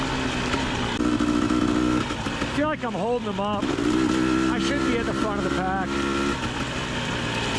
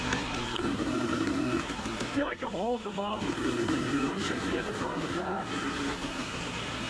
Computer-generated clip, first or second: second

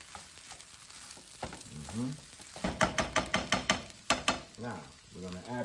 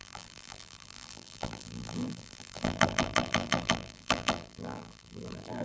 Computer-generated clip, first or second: second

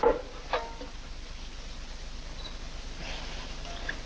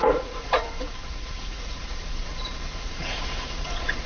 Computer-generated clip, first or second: second